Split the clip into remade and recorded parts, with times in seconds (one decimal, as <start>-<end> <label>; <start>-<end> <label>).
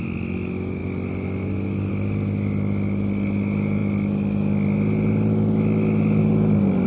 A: 0.0-6.9 recorded